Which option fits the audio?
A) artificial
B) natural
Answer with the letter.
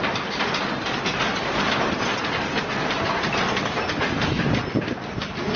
B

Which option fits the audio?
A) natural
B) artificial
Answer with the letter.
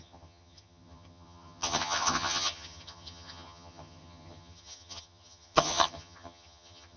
B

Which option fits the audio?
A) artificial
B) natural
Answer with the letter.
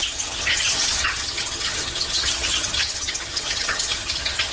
A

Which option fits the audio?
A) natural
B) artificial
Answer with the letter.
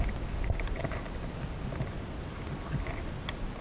A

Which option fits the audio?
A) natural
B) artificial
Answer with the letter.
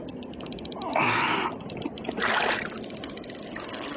A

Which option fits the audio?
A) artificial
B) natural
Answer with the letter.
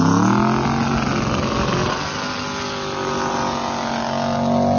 B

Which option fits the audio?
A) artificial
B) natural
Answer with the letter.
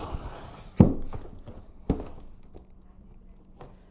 B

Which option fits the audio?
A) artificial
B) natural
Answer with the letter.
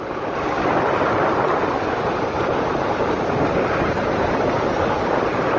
B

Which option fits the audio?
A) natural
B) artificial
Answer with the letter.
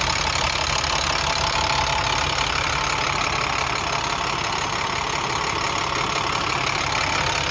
A